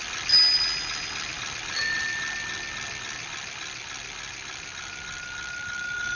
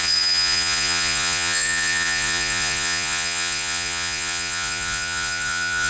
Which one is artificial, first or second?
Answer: second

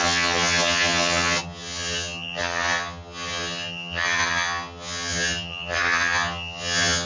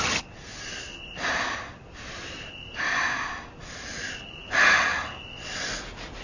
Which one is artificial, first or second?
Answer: first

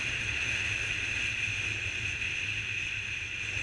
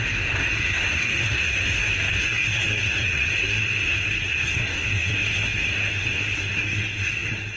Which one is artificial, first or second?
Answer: second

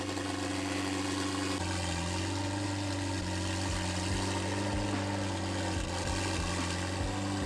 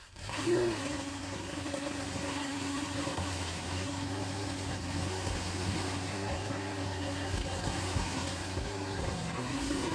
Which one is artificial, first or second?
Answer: second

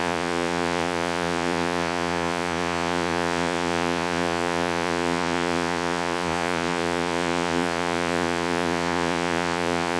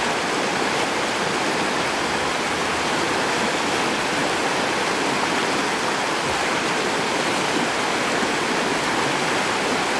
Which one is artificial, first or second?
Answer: first